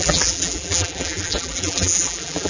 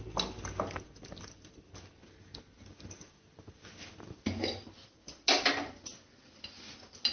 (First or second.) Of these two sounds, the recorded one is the second